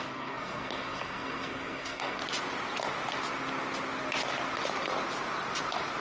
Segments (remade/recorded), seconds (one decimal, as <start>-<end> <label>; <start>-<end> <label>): 0.0-2.2 remade; 2.2-6.0 recorded